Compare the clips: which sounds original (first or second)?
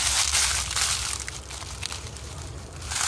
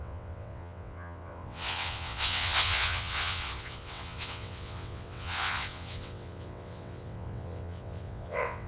first